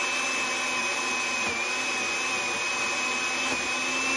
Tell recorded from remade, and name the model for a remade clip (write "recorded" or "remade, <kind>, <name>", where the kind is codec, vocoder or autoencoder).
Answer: recorded